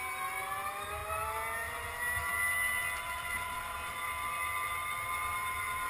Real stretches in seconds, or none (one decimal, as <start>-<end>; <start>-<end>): 0.0-5.9